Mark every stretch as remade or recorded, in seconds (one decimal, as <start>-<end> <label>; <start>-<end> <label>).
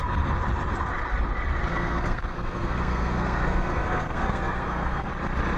0.0-1.7 recorded; 1.7-5.1 remade; 5.1-5.6 recorded